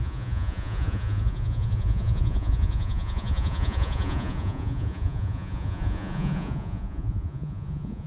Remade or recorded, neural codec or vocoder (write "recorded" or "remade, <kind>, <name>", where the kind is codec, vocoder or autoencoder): remade, vocoder, Vocos